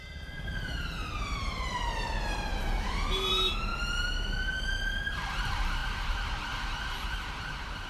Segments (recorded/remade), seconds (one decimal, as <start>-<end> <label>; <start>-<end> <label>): 0.0-3.7 remade; 3.7-5.1 recorded; 5.1-7.9 remade